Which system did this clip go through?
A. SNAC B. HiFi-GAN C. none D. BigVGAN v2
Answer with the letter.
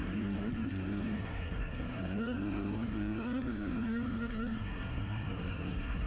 A